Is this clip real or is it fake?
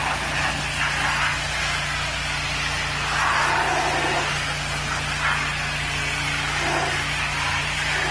real